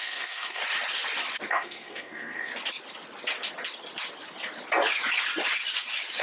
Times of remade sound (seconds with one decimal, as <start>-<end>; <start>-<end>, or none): 0.0-0.6; 1.5-2.5